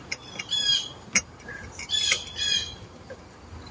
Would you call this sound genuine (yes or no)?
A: yes